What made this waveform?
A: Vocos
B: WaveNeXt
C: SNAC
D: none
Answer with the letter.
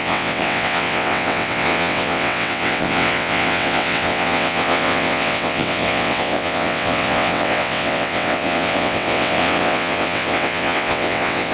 B